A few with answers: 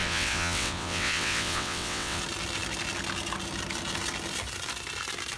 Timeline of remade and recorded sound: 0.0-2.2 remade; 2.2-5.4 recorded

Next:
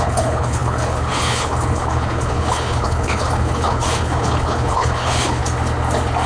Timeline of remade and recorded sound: 0.0-5.4 remade; 5.4-6.3 recorded